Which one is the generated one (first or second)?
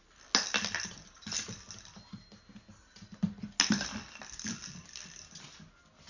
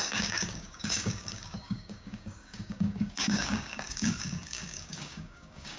second